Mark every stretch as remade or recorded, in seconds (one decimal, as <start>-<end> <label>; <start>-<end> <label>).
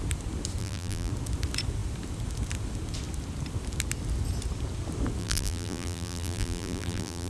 0.0-0.6 recorded; 0.6-1.1 remade; 1.1-5.2 recorded; 5.2-7.3 remade